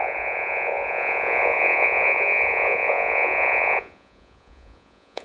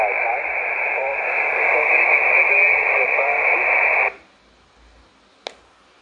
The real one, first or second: second